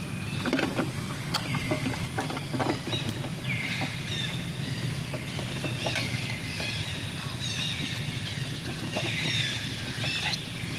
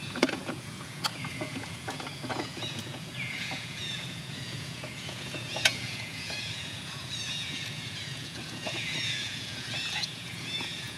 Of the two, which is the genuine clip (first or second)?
first